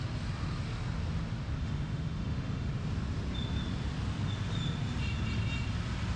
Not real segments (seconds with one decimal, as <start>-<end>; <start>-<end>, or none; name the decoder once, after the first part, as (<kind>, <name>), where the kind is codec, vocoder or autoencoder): 1.6-2.7 (autoencoder, DAC-VAE)